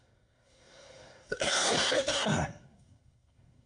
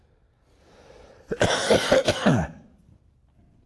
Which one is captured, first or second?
second